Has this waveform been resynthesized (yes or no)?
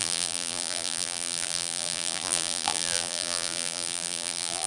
yes